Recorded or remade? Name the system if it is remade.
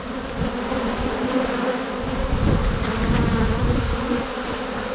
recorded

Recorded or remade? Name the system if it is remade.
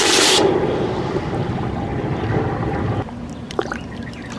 recorded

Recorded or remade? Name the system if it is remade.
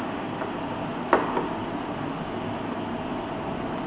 recorded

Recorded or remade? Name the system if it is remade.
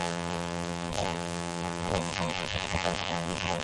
remade, vocoder, BigVGAN v2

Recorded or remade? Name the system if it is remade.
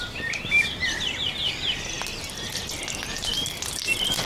recorded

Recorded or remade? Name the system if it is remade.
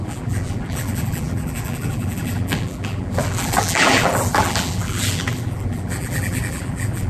remade, vocoder, BigVGAN v2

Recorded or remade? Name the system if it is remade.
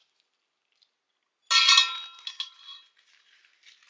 recorded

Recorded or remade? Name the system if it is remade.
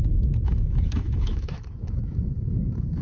remade, autoencoder, DAC-VAE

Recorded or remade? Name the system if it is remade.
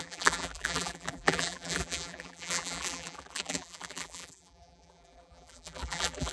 remade, vocoder, BigVGAN v2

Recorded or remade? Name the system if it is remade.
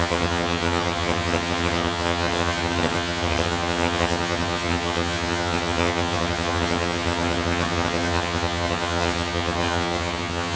remade, vocoder, HiFi-GAN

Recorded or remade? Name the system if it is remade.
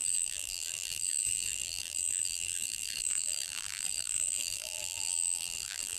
remade, vocoder, BigVGAN v2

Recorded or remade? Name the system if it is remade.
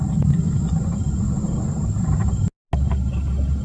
recorded